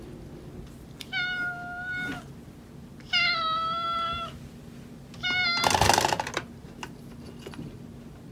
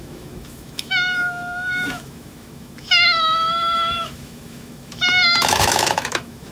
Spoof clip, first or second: second